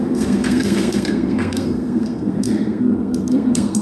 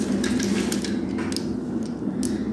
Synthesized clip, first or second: first